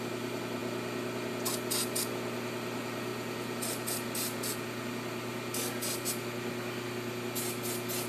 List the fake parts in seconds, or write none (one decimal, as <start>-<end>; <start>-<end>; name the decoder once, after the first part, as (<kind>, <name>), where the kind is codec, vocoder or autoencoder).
none